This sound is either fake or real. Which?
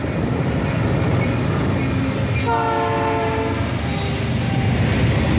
real